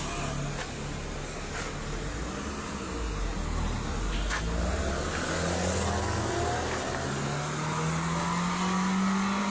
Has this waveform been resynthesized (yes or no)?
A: no